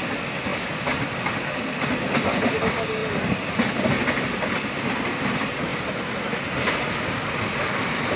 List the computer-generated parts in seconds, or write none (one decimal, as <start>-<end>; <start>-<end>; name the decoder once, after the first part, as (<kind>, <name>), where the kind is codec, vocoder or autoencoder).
none